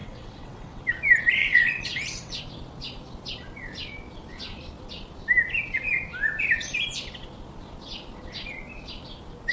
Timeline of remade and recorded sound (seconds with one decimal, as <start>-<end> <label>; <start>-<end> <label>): 0.0-0.8 remade; 0.8-1.4 recorded; 1.4-2.4 remade; 2.4-9.5 recorded